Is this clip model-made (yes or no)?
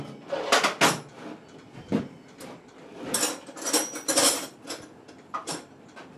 no